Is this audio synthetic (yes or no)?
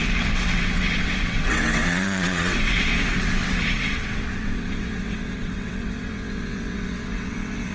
yes